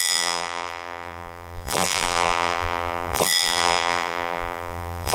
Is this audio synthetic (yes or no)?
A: yes